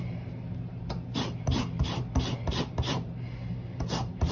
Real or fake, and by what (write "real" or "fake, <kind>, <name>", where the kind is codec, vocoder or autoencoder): real